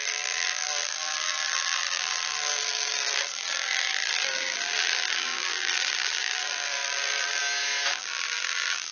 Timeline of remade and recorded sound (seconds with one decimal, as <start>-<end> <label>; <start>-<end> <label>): 0.0-7.4 remade; 7.4-7.9 recorded; 7.9-8.9 remade